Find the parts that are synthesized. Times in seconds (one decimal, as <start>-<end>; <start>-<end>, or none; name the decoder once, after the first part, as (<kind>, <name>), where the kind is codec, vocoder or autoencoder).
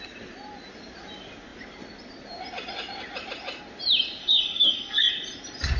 4.2-5.1 (codec, SNAC)